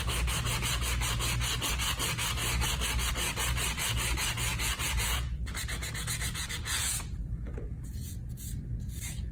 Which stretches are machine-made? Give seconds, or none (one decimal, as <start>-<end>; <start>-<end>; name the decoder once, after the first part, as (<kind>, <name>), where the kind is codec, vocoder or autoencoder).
4.5-8.5 (vocoder, Vocos)

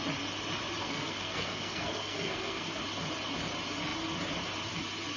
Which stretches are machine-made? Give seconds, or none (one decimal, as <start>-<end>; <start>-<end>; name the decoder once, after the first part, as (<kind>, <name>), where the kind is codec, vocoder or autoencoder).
0.8-2.8 (codec, SNAC)

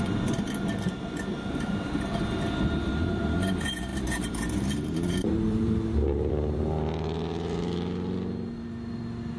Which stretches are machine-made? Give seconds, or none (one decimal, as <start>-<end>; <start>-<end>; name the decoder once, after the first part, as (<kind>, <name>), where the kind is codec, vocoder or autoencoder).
3.9-6.3 (vocoder, BigVGAN v2)

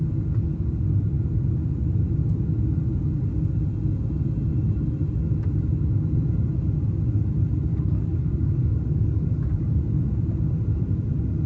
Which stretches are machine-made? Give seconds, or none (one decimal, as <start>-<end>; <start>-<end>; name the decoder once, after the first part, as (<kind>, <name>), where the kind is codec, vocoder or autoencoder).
7.7-9.8 (codec, DAC)